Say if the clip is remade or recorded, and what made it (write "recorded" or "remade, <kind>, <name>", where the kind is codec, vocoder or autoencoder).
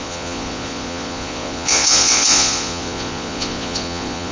remade, vocoder, Vocos